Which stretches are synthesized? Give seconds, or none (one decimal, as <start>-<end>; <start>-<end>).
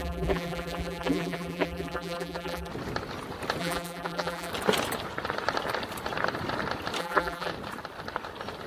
0.0-2.7; 3.6-4.5; 7.0-7.5